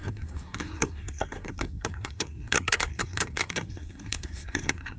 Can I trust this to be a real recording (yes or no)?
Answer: no